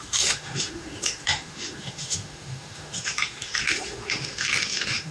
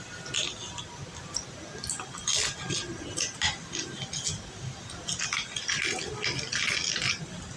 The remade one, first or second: first